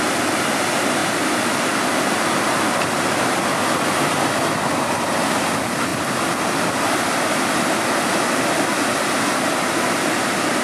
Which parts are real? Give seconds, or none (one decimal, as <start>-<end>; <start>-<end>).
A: 0.0-10.6